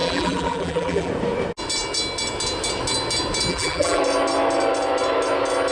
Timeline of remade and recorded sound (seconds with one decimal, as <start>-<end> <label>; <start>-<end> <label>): 0.0-1.1 remade; 1.1-3.5 recorded; 3.5-4.0 remade; 4.0-5.7 recorded